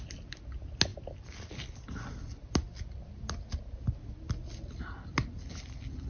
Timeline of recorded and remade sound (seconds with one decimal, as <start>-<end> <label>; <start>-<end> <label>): 0.0-6.1 recorded